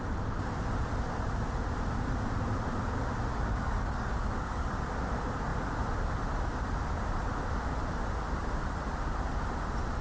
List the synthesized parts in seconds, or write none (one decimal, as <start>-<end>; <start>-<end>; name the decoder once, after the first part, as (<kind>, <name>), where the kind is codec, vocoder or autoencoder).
3.3-4.8 (codec, DAC)